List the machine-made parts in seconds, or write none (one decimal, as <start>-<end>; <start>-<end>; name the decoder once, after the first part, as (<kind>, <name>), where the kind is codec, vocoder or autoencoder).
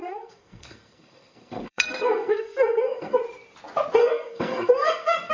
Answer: 0.0-3.2 (codec, SNAC); 4.0-5.3